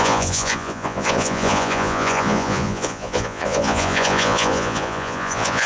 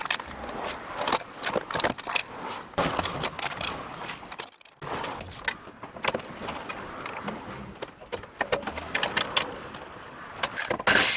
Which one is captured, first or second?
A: second